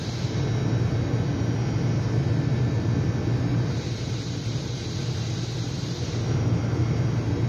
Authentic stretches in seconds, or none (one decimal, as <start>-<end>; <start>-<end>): 0.0-3.5; 4.9-7.5